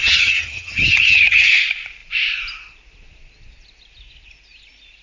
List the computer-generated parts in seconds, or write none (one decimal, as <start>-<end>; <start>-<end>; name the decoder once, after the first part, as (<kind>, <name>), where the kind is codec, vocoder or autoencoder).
0.0-1.5 (vocoder, HiFi-GAN)